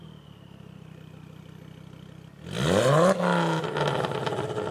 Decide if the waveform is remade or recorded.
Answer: recorded